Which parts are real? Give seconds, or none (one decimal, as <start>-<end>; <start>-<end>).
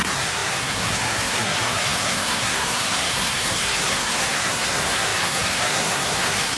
none